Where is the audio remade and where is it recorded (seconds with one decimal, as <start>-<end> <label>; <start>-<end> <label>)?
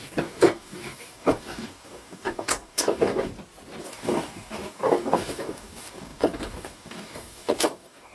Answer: 0.0-3.3 remade; 3.3-3.8 recorded; 3.8-8.1 remade